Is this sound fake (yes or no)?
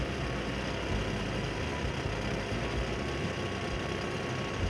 no